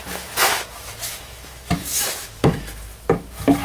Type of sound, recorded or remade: remade